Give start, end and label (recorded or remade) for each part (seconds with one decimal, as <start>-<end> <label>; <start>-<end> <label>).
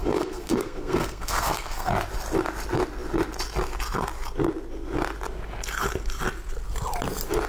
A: 0.0-1.9 remade; 1.9-7.5 recorded